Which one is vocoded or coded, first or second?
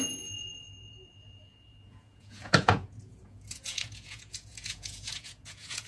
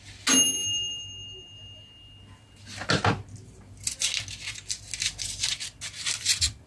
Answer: first